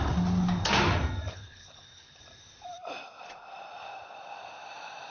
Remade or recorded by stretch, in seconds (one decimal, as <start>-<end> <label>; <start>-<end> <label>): 0.0-1.3 recorded; 1.3-2.2 remade; 2.2-5.1 recorded